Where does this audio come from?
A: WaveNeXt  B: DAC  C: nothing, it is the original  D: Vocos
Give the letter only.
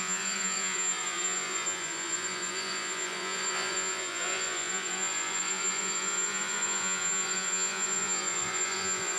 D